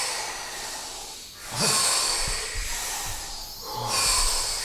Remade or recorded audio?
recorded